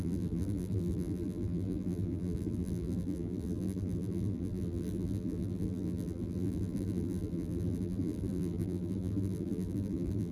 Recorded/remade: remade